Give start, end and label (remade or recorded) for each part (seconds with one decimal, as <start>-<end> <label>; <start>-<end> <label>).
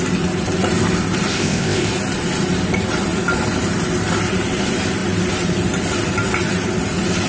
0.0-1.3 recorded; 1.3-1.9 remade; 1.9-7.3 recorded